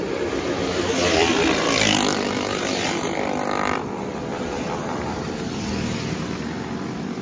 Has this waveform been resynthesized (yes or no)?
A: yes